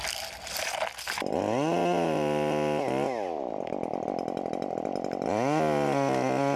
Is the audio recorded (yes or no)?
yes